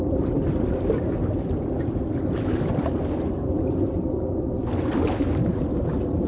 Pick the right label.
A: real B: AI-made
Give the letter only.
A